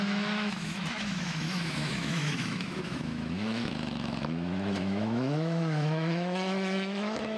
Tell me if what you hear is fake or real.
fake